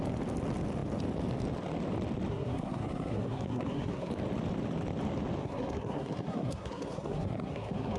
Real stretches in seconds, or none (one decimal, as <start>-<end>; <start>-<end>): 0.0-2.3; 4.1-5.4